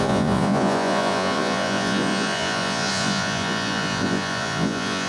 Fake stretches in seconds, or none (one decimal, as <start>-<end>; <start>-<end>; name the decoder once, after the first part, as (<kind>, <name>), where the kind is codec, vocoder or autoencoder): 0.0-5.1 (vocoder, Vocos)